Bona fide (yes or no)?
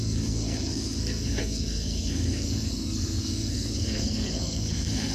no